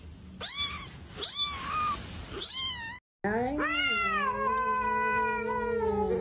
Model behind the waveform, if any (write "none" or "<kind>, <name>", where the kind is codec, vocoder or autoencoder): none